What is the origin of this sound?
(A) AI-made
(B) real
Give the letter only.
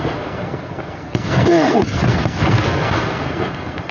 A